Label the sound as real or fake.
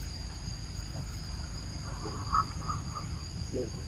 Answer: real